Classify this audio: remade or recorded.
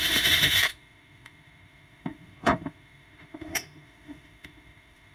remade